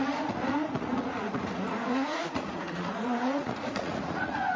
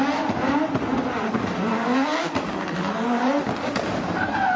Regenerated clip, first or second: first